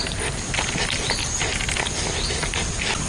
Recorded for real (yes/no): yes